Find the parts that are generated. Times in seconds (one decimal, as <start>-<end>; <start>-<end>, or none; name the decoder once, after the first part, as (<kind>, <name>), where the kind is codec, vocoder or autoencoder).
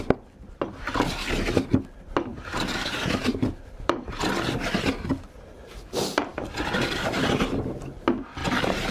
2.3-4.2 (vocoder, BigVGAN v2); 6.3-7.1; 8.4-8.9